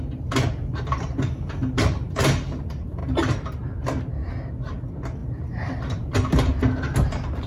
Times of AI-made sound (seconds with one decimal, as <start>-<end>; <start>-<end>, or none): 5.2-6.1